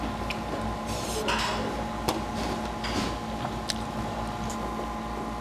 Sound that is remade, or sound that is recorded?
recorded